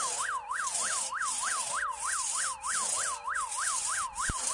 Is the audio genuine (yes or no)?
yes